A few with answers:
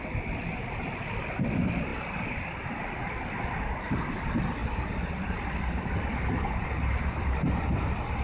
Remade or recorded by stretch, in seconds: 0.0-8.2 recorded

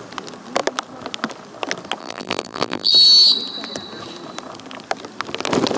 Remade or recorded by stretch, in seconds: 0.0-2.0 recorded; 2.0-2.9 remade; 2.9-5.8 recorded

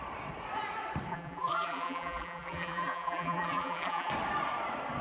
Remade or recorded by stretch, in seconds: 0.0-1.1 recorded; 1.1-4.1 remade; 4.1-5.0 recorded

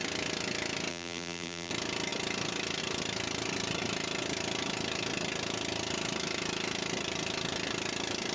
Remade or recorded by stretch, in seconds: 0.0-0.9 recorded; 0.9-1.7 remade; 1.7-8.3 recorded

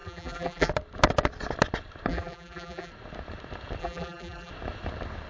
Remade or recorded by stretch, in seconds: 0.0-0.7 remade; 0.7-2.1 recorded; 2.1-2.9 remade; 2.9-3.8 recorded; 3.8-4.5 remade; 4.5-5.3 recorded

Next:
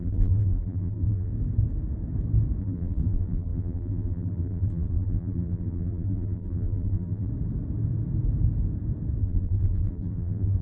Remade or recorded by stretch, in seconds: 0.0-1.3 remade; 1.3-2.6 recorded; 2.6-7.3 remade; 7.3-9.2 recorded; 9.2-10.6 remade